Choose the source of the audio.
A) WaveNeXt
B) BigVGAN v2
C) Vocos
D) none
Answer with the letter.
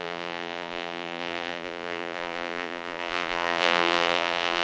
B